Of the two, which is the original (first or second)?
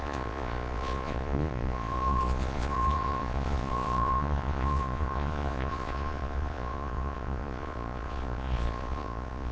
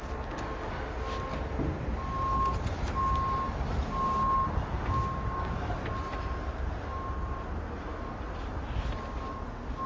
second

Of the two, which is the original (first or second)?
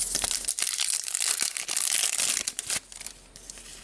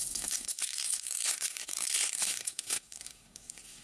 first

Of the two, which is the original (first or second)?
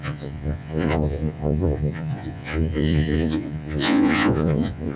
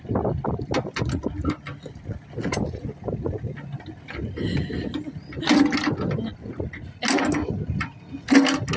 second